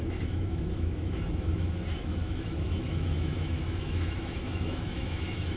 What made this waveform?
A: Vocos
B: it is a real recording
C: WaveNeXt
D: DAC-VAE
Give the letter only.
D